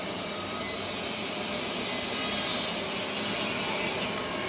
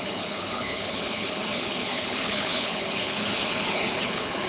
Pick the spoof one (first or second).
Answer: second